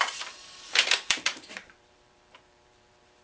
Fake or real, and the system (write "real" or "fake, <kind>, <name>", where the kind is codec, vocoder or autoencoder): fake, vocoder, BigVGAN v2